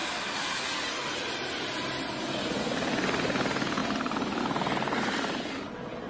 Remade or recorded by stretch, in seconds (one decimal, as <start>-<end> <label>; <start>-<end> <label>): 0.0-6.1 recorded